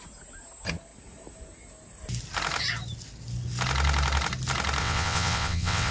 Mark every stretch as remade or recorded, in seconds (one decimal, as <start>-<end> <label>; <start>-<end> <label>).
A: 0.0-4.8 recorded; 4.8-5.9 remade